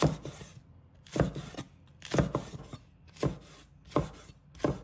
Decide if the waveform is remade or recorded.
recorded